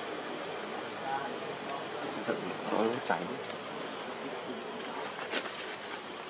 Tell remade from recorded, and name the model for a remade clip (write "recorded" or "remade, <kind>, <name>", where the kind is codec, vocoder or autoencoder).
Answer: recorded